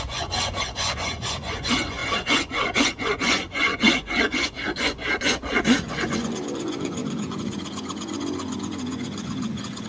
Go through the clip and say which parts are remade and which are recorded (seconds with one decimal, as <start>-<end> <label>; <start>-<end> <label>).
0.0-9.9 remade